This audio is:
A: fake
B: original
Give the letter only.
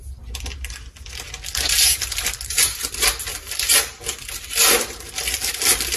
B